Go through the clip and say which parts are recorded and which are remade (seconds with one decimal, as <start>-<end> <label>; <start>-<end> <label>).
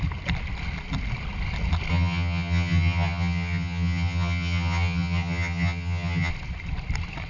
0.0-1.9 recorded; 1.9-6.3 remade; 6.3-7.3 recorded